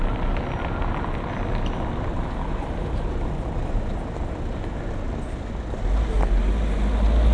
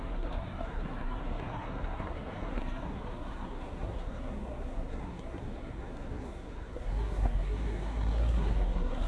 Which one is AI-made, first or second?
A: second